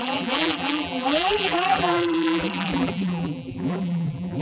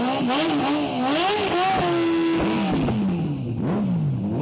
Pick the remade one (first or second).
first